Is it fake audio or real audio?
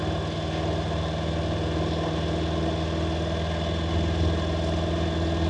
real